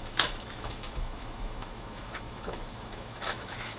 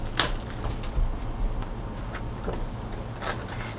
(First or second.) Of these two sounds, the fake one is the first